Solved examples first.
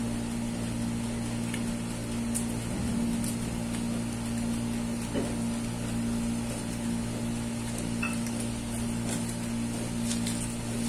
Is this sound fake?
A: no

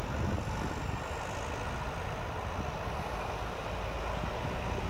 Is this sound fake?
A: no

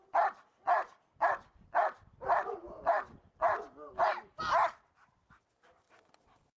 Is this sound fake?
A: no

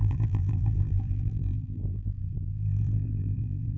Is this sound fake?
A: yes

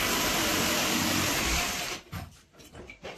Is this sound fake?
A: yes